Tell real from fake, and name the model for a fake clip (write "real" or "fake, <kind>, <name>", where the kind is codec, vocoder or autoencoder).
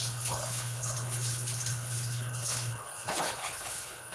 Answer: fake, codec, HILCodec